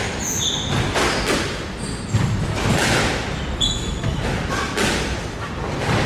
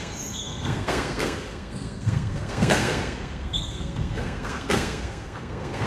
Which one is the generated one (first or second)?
second